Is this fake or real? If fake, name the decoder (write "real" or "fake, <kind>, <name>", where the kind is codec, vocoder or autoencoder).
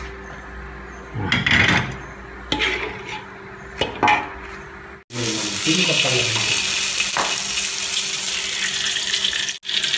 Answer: real